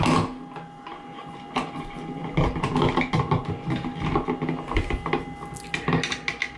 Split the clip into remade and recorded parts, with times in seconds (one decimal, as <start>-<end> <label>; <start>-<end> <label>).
0.0-6.6 recorded

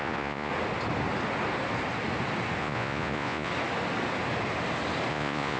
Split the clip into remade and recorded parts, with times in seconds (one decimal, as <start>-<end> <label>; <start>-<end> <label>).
0.0-0.5 remade; 0.5-2.6 recorded; 2.6-3.5 remade; 3.5-5.1 recorded; 5.1-5.6 remade

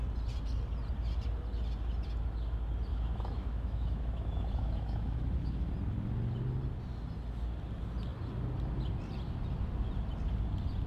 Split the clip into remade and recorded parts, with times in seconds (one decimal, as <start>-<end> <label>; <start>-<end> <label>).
0.0-2.9 recorded; 2.9-5.7 remade; 5.7-10.9 recorded

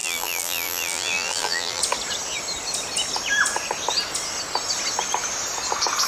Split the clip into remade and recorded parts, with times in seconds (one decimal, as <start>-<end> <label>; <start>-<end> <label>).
0.0-1.8 remade; 1.8-6.1 recorded

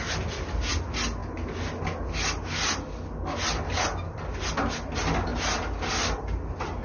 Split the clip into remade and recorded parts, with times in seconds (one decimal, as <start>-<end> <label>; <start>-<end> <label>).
0.0-6.8 recorded

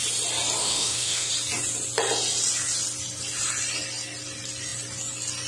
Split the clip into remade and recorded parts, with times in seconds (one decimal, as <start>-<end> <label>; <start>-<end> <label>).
0.0-0.6 recorded; 0.6-1.3 remade; 1.3-5.5 recorded

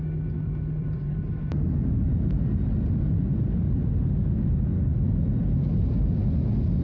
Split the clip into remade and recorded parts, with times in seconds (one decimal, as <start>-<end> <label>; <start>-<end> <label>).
0.0-0.8 recorded; 0.8-1.4 remade; 1.4-6.8 recorded